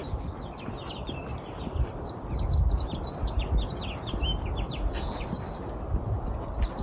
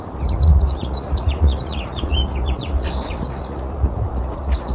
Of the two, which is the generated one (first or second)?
second